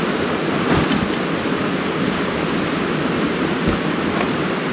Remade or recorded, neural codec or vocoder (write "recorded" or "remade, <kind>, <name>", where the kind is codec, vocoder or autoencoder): recorded